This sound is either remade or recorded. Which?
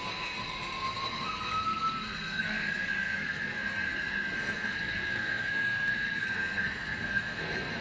remade